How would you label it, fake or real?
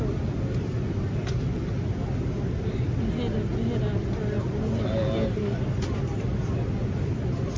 real